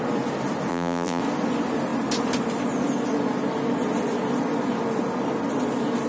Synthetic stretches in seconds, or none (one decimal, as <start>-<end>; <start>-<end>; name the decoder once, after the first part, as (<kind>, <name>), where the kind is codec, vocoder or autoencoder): 0.7-1.2 (vocoder, BigVGAN v2)

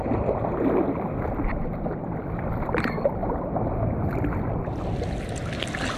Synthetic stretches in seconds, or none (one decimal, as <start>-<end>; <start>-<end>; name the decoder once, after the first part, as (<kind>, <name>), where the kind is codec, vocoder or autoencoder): none